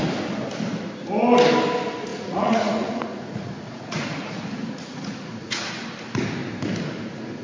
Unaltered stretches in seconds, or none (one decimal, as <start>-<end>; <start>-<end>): 0.0-2.1; 5.7-7.4